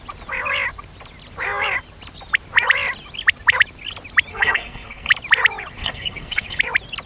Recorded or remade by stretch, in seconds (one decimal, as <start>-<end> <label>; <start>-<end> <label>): 0.0-4.3 recorded; 4.3-5.1 remade; 5.1-5.8 recorded; 5.8-6.6 remade; 6.6-7.1 recorded